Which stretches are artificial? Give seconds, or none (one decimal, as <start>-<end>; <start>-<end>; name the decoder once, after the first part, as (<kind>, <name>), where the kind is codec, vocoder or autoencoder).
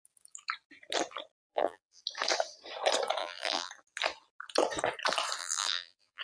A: 1.5-2.0 (vocoder, BigVGAN v2); 3.2-3.7; 5.4-6.2